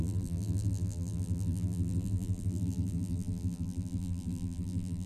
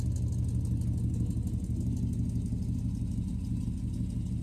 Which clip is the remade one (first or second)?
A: first